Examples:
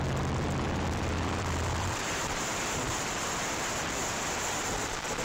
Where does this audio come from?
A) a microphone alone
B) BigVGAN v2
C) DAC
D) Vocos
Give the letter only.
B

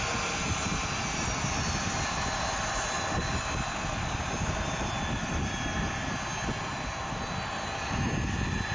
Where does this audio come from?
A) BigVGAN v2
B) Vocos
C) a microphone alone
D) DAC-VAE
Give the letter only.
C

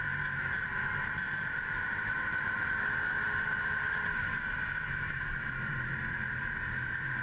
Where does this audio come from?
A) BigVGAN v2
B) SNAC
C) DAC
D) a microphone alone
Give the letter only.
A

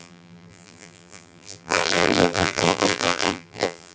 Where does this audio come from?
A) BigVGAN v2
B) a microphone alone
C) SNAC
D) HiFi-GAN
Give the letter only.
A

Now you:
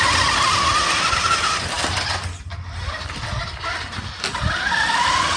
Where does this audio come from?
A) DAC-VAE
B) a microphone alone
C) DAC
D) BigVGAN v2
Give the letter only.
B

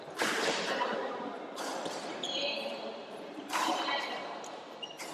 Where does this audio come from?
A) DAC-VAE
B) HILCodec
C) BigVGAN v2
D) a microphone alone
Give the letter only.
C